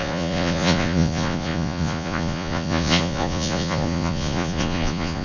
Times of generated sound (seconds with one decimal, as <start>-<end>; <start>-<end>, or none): 0.0-5.2